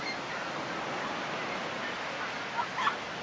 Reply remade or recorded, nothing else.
recorded